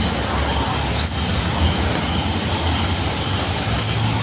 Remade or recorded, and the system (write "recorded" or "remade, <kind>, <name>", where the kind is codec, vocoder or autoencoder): recorded